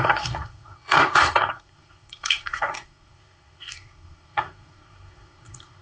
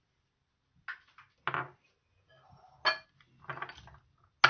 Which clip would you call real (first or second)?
second